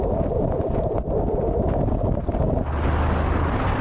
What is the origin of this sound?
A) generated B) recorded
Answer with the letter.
B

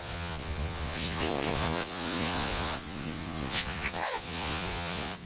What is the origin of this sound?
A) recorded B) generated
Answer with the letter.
B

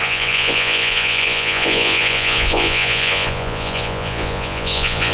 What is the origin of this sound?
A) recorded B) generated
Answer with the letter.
B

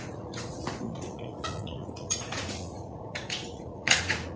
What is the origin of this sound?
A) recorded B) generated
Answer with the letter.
B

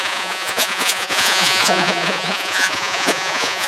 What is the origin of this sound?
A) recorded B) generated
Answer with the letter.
B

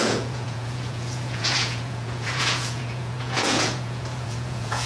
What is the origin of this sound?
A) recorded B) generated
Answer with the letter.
B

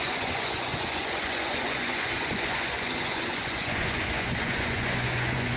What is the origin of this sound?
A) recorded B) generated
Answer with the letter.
B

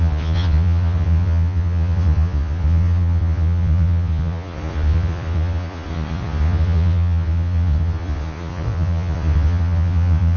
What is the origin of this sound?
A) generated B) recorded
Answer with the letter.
A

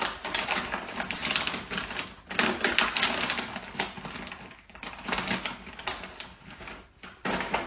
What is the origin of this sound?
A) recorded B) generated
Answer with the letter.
A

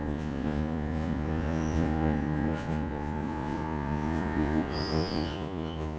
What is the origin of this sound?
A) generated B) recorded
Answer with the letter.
A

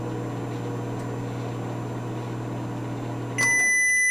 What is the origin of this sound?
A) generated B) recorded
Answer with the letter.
B